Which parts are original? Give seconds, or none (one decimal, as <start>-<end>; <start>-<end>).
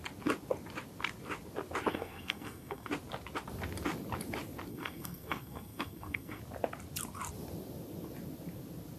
0.0-1.9; 2.9-4.7; 6.4-9.0